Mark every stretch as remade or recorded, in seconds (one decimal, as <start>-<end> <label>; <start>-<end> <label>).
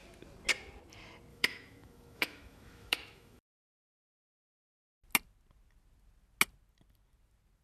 0.0-1.3 recorded; 1.3-4.6 remade; 4.6-7.6 recorded